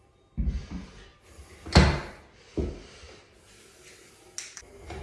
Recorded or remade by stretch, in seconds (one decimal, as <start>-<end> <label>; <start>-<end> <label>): 0.0-5.0 recorded